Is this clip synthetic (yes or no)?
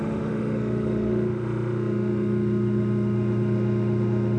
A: yes